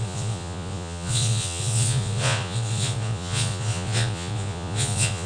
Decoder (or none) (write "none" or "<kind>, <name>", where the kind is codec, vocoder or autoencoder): vocoder, Vocos